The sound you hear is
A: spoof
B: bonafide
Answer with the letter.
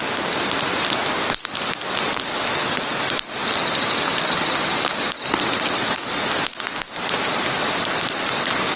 B